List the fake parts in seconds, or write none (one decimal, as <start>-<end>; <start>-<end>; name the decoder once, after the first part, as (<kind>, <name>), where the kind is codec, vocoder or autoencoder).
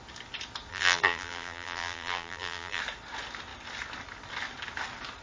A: 0.7-2.8 (vocoder, BigVGAN v2)